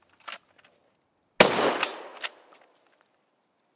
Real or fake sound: real